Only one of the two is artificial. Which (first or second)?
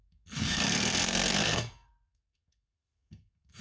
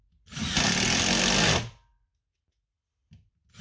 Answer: first